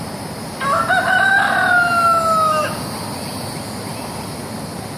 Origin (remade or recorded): recorded